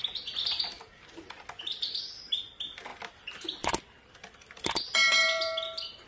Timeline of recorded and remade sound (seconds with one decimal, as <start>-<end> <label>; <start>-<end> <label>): 0.0-2.9 recorded; 2.9-6.1 remade